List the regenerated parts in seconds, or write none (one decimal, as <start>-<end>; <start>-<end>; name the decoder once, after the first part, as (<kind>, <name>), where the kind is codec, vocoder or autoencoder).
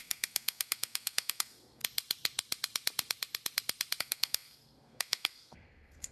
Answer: 0.0-1.8 (codec, SNAC); 4.0-6.1